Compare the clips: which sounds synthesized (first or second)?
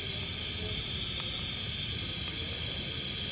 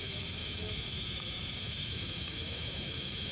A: second